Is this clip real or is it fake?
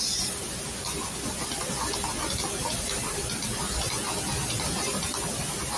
real